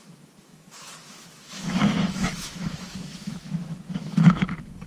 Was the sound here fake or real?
fake